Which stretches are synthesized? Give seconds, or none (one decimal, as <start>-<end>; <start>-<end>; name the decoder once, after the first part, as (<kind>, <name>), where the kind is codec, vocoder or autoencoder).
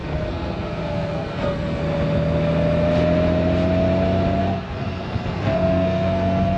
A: 0.0-1.8 (codec, SNAC); 4.4-6.6